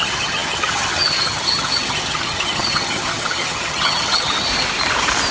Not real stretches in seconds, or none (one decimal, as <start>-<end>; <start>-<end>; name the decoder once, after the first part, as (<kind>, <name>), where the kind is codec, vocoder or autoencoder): 0.0-4.5 (vocoder, HiFi-GAN)